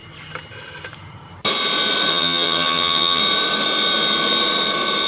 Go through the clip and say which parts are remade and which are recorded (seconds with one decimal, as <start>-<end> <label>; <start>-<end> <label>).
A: 0.0-2.1 recorded; 2.1-3.2 remade; 3.2-5.1 recorded